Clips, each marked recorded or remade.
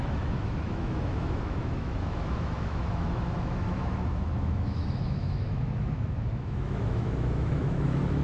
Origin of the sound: remade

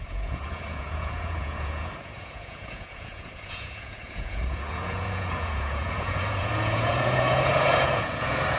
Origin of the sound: remade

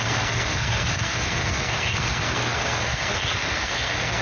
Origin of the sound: remade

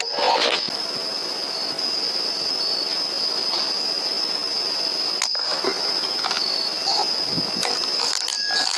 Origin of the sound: recorded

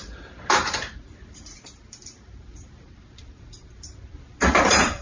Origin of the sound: remade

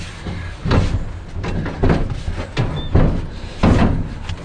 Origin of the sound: recorded